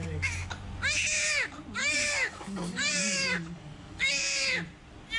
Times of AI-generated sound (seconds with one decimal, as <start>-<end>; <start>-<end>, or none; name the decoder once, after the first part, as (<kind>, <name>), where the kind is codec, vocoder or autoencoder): 0.0-0.5 (codec, DAC); 1.8-4.1